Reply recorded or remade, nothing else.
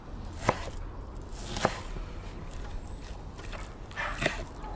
recorded